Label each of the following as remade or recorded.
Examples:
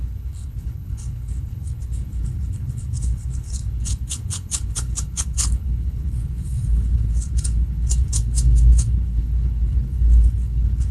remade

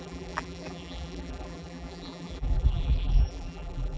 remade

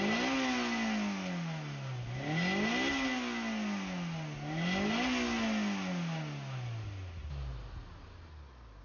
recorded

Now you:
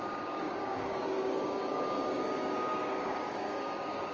remade